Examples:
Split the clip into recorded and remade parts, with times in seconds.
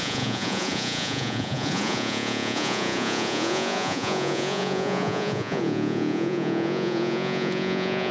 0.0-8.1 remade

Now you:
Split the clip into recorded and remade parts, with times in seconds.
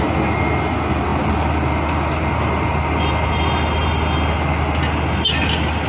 0.0-5.9 recorded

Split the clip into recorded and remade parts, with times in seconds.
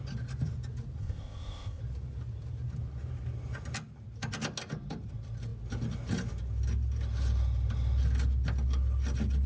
0.0-1.0 recorded; 1.0-1.8 remade; 1.8-9.5 recorded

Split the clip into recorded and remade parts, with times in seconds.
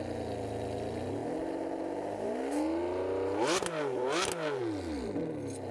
0.0-5.7 recorded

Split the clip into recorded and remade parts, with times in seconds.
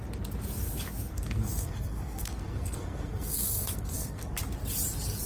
0.0-1.1 recorded; 1.1-4.3 remade; 4.3-5.3 recorded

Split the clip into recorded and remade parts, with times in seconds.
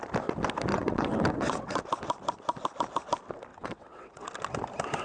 0.0-0.7 recorded; 0.7-1.8 remade; 1.8-3.5 recorded; 3.5-4.3 remade; 4.3-5.0 recorded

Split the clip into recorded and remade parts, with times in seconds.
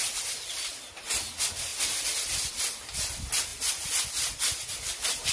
0.0-5.3 recorded